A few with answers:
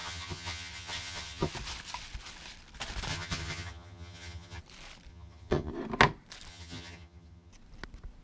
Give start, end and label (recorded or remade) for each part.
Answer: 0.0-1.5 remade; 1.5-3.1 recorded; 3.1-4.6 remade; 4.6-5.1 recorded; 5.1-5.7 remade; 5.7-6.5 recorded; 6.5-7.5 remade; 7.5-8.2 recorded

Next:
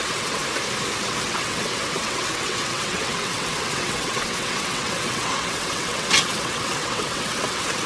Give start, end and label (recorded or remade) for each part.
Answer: 0.0-0.4 remade; 0.4-1.0 recorded; 1.0-7.9 remade

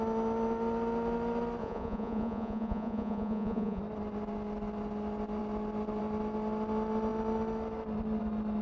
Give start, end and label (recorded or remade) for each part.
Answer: 0.0-1.6 recorded; 1.6-3.8 remade; 3.8-8.6 recorded

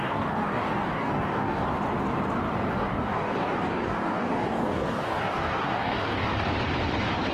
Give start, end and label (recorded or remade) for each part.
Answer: 0.0-1.7 remade; 1.7-2.7 recorded; 2.7-6.3 remade; 6.3-7.3 recorded

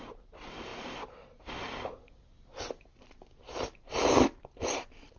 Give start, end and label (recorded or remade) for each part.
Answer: 0.0-5.2 recorded

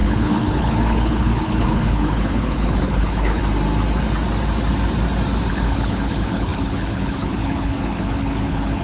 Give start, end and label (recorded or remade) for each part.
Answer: 0.0-3.4 remade; 3.4-5.5 recorded; 5.5-8.8 remade

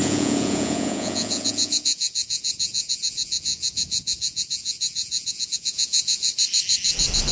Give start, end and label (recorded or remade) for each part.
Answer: 0.0-6.3 remade; 6.3-7.3 recorded